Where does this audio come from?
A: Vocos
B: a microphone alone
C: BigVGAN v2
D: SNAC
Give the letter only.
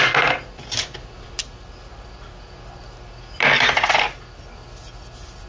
B